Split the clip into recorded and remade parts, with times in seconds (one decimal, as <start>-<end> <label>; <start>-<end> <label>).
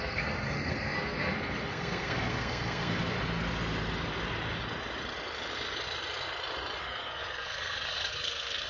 0.0-3.0 remade; 3.0-6.8 recorded; 6.8-8.7 remade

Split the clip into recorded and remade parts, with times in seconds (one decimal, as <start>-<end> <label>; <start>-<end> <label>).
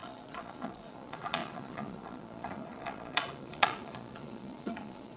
0.0-5.2 remade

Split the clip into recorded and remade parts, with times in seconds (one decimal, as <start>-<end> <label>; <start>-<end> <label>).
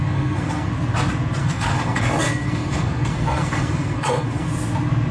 0.0-0.7 remade; 0.7-1.4 recorded; 1.4-4.5 remade; 4.5-5.1 recorded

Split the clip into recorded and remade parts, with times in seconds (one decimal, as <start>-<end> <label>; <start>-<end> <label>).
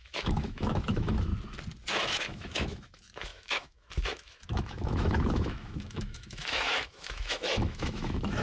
0.0-1.3 remade; 1.3-1.9 recorded; 1.9-8.4 remade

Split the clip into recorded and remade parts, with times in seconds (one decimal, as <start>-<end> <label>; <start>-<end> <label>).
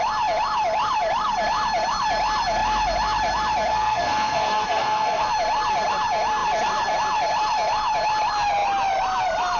0.0-3.7 recorded; 3.7-5.3 remade; 5.3-9.6 recorded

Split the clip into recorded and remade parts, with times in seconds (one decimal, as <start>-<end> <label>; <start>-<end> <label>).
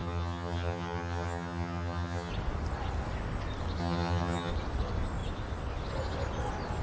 0.0-2.3 remade; 2.3-3.8 recorded; 3.8-4.5 remade; 4.5-6.8 recorded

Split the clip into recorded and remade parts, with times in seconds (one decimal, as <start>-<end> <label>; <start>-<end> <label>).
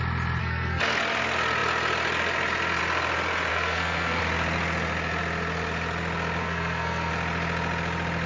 0.0-0.4 recorded; 0.4-1.0 remade; 1.0-3.5 recorded; 3.5-4.2 remade; 4.2-6.4 recorded; 6.4-7.1 remade; 7.1-8.3 recorded